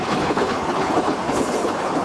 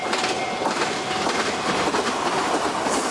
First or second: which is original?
second